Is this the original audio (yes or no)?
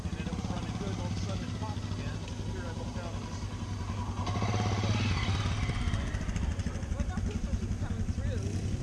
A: yes